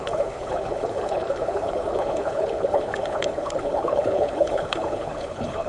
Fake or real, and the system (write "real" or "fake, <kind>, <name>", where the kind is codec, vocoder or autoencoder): fake, codec, HILCodec